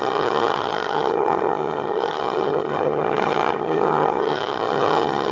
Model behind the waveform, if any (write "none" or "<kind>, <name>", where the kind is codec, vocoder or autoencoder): vocoder, HiFi-GAN